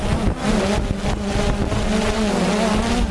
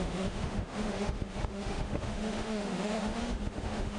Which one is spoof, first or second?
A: second